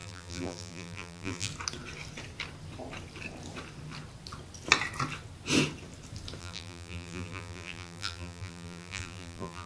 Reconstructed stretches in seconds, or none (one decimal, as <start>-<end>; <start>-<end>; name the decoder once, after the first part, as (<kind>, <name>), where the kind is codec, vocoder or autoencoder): 0.0-1.5 (vocoder, BigVGAN v2); 6.4-9.7

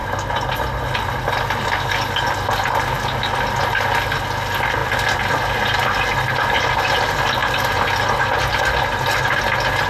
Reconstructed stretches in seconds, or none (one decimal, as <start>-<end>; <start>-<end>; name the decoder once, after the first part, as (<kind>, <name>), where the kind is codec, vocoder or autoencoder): none

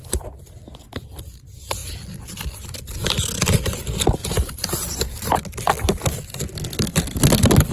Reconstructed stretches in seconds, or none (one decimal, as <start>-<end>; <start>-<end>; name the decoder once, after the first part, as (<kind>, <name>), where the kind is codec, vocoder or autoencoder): 4.2-5.7 (vocoder, BigVGAN v2)

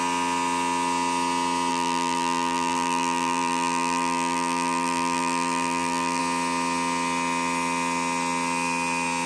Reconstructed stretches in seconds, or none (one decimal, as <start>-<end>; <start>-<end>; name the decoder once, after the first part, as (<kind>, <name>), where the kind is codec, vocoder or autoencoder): 1.7-6.2 (vocoder, BigVGAN v2)

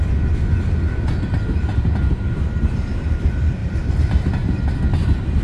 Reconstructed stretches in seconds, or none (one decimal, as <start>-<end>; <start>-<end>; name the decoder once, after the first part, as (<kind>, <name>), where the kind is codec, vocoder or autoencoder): 1.7-3.2 (vocoder, BigVGAN v2); 3.6-4.3

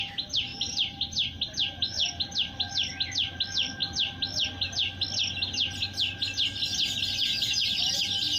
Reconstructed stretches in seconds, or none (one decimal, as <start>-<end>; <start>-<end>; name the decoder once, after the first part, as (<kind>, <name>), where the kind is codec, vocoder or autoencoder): 0.5-2.2 (vocoder, BigVGAN v2)